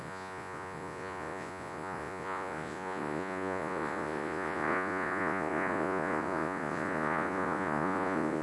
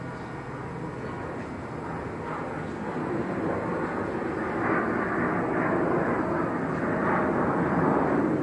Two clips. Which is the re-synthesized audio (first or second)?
first